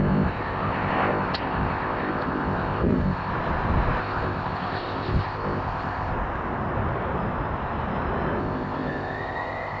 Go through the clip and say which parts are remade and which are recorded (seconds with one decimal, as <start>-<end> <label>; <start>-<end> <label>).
0.0-3.3 remade; 3.3-4.0 recorded; 4.0-6.1 remade; 6.1-8.4 recorded; 8.4-9.8 remade